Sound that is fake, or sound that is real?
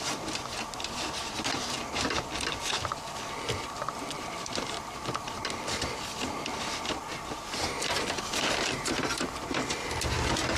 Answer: real